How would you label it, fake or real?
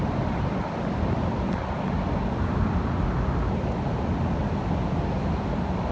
real